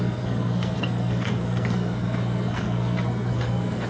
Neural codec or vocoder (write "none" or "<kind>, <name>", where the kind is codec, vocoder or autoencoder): codec, SNAC